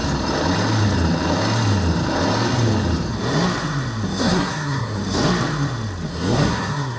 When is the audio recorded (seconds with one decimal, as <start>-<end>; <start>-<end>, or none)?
0.0-4.2; 5.0-6.1